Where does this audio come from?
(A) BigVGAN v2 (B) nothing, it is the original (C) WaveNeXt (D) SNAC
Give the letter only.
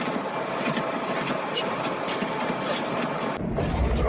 A